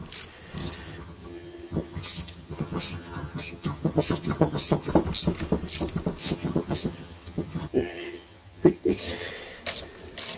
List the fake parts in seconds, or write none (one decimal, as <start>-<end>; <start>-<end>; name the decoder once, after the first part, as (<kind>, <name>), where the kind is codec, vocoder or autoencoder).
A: 0.6-4.9 (vocoder, HiFi-GAN); 6.2-9.3